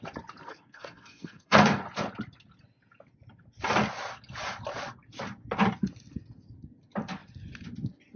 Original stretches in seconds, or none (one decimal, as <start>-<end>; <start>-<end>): 0.0-0.4; 1.8-8.2